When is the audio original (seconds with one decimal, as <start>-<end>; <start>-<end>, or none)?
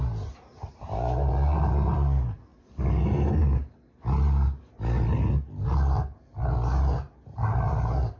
0.0-8.2